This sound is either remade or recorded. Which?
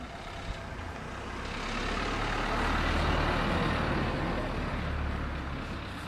recorded